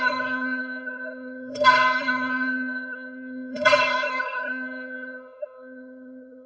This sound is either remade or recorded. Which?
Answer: remade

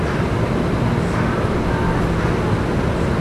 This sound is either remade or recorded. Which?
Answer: recorded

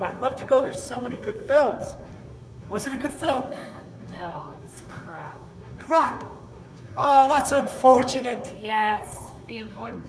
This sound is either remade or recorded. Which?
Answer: remade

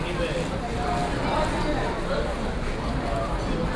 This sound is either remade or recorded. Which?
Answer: recorded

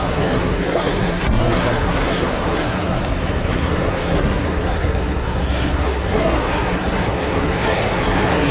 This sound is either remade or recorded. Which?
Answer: remade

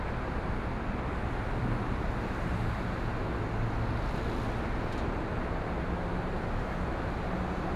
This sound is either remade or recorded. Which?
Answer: recorded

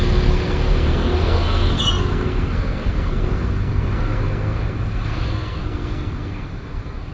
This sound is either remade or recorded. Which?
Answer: remade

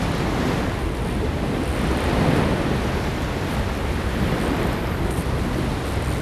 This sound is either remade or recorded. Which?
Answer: recorded